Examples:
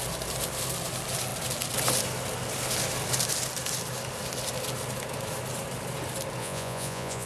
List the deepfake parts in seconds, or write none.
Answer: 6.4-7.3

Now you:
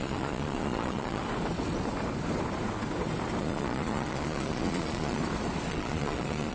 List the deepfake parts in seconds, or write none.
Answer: 0.0-1.2; 3.4-5.2; 5.7-6.5

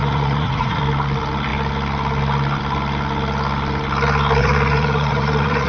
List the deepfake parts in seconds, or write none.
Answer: 0.0-0.8; 4.4-5.7

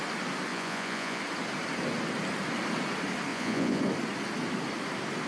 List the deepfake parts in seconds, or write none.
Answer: 0.5-1.2; 3.3-3.8